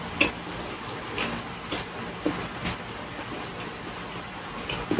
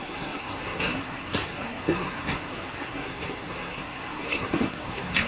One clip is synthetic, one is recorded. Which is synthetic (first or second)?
second